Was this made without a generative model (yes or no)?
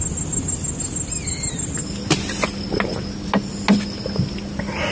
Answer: yes